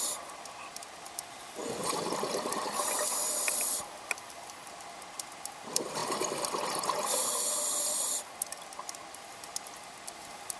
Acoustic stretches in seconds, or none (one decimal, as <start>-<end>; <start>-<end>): 0.0-1.8; 3.5-10.6